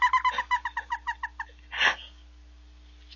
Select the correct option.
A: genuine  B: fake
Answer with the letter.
A